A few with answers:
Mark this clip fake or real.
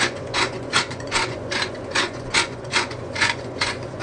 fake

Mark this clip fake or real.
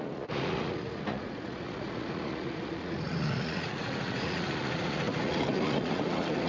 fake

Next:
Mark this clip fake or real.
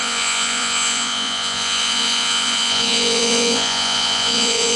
fake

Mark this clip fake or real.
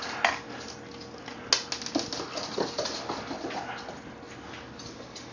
real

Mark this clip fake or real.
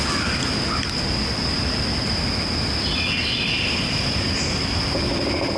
real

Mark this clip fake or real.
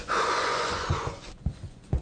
fake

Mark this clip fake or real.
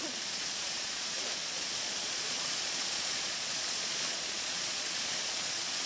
fake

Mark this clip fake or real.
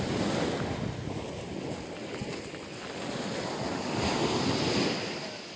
real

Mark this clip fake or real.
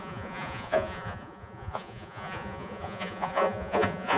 fake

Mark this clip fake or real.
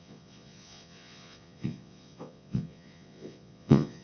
fake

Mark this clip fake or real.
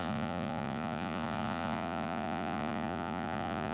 fake